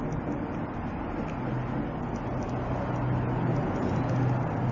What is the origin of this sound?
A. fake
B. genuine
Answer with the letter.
B